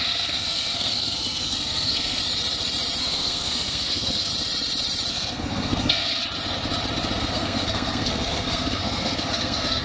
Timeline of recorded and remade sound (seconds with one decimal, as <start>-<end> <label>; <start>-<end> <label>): 0.0-2.2 remade; 2.2-3.0 recorded; 3.0-4.3 remade; 4.3-5.1 recorded; 5.1-6.2 remade; 6.2-7.2 recorded; 7.2-9.8 remade